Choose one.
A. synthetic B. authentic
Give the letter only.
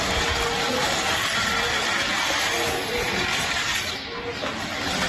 B